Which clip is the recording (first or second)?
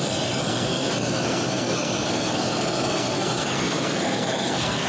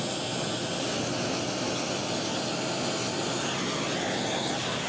second